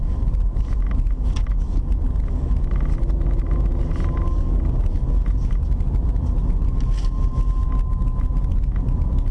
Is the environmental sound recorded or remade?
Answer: recorded